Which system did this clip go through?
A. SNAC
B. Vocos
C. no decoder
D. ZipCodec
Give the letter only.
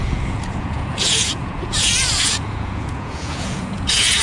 B